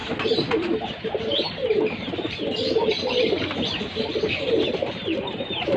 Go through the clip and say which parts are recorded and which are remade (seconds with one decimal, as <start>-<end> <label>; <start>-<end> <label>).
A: 0.0-0.9 recorded; 0.9-5.8 remade